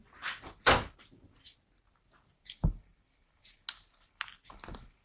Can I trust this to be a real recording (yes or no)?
yes